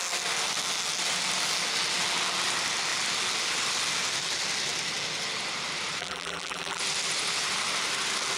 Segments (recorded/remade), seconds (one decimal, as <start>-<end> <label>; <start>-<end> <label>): 0.0-6.0 recorded; 6.0-6.8 remade; 6.8-8.4 recorded